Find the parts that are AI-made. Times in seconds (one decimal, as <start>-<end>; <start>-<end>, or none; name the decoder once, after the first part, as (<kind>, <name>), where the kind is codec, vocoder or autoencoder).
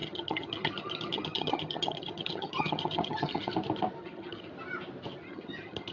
0.0-3.5 (vocoder, HiFi-GAN); 4.0-4.5; 5.2-5.9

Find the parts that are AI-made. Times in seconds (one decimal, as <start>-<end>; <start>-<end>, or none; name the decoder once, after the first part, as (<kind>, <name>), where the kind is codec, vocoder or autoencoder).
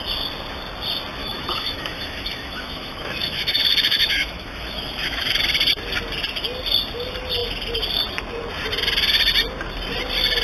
1.2-5.4 (autoencoder, DAC-VAE)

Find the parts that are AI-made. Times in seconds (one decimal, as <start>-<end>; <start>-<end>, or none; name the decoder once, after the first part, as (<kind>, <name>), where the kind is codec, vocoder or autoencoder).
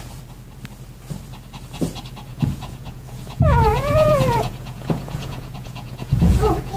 2.3-6.8 (vocoder, Vocos)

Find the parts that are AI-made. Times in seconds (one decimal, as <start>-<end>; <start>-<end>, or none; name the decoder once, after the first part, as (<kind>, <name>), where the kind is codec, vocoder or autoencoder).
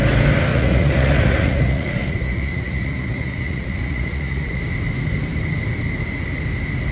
0.5-4.6 (vocoder, Vocos)